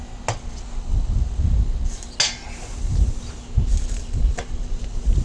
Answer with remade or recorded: recorded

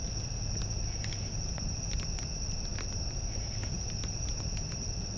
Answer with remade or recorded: recorded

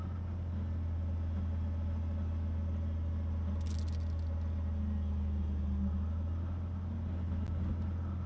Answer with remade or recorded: recorded